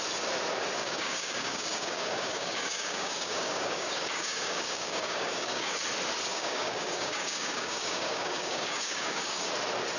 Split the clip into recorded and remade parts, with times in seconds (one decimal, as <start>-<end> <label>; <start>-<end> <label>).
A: 0.0-0.8 recorded; 0.8-5.8 remade; 5.8-6.3 recorded; 6.3-9.5 remade; 9.5-10.0 recorded